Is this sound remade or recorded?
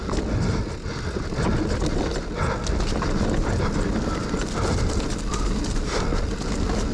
recorded